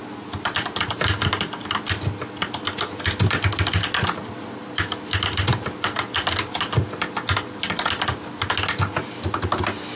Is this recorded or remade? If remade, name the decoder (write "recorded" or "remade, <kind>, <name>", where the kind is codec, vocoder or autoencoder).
recorded